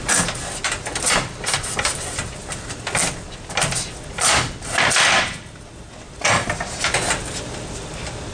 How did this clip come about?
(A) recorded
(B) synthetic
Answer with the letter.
A